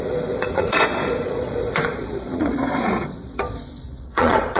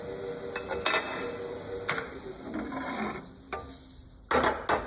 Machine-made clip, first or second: first